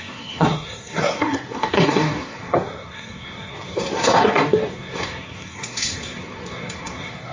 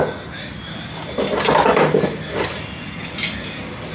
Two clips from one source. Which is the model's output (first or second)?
first